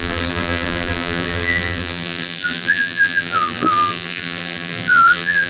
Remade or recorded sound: remade